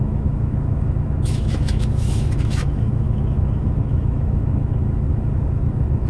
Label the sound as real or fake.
fake